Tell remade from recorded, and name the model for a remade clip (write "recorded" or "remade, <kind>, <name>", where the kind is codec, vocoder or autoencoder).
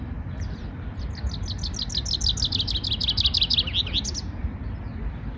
recorded